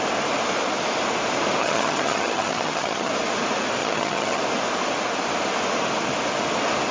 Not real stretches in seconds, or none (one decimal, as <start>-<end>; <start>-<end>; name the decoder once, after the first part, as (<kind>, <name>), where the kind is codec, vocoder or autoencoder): 1.6-3.1 (vocoder, HiFi-GAN); 3.8-4.4